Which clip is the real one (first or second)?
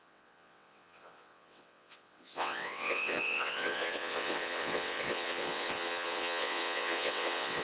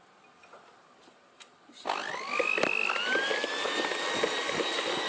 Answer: second